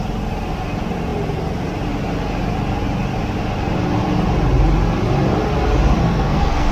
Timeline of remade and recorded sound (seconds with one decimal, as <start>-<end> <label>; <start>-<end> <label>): 0.0-6.0 recorded; 6.0-6.7 remade